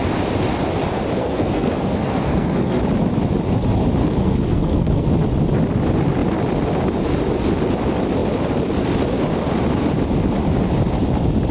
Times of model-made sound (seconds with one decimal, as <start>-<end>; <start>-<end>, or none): 1.2-2.8; 4.0-5.1